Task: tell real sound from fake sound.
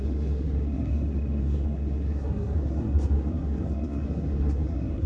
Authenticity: fake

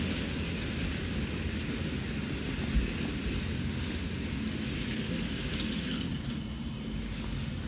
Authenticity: real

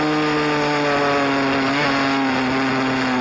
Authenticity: real